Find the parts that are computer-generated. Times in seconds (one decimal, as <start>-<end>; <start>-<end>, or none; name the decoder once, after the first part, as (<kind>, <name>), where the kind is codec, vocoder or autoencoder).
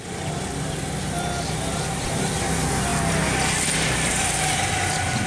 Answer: none